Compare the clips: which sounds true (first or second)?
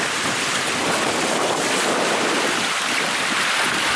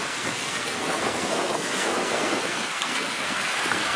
first